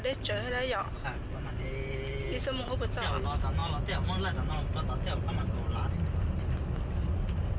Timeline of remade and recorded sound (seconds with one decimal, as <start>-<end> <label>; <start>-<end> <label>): 0.0-7.6 recorded